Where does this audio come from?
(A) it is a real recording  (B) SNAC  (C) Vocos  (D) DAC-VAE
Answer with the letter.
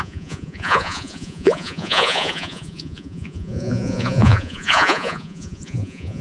C